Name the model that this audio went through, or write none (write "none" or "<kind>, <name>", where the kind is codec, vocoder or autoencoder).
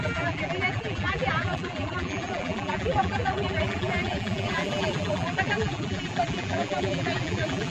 vocoder, BigVGAN v2